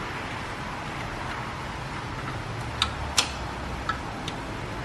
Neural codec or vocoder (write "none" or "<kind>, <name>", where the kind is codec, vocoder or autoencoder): none